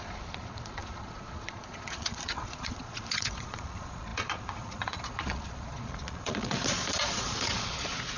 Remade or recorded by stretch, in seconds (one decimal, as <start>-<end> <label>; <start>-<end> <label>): 0.0-8.2 remade